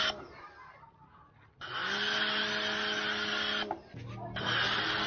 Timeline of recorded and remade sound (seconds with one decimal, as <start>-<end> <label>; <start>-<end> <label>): 0.0-5.1 recorded